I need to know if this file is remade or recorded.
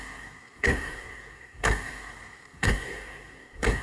remade